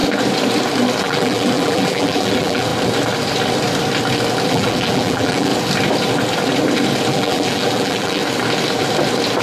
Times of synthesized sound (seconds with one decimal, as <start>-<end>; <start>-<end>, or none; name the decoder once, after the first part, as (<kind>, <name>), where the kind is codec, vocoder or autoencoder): 1.0-2.7 (vocoder, BigVGAN v2); 4.5-5.5; 7.1-8.2

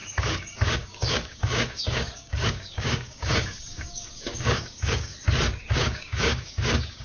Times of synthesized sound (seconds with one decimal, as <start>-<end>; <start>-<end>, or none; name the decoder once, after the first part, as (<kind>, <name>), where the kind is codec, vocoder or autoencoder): 0.0-5.1 (codec, DAC); 5.6-7.0